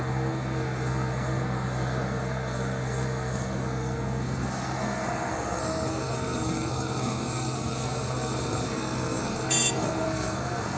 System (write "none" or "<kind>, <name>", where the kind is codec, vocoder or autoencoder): codec, SNAC